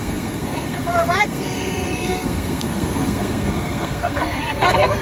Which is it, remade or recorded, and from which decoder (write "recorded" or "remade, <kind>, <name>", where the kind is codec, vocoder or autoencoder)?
remade, codec, SNAC